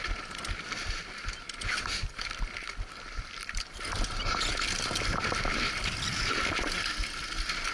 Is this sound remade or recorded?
remade